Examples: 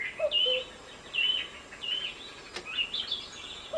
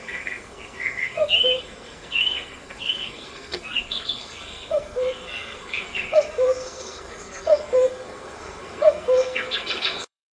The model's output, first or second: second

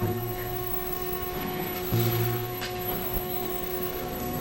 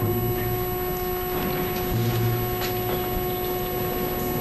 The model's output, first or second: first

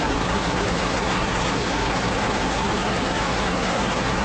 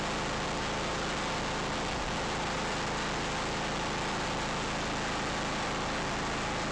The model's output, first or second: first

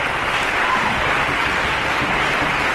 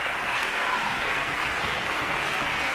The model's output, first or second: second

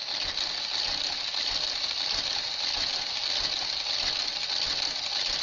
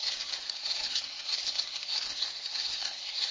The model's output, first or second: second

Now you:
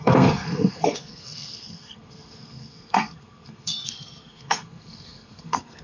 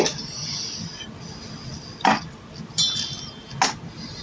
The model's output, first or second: first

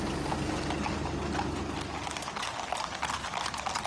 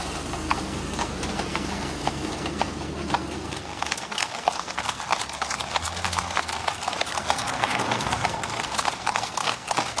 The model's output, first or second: second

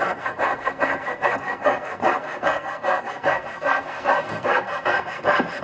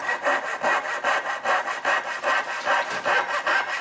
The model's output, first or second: first